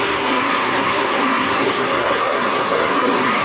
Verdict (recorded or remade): remade